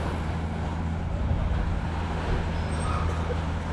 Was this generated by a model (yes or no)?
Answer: no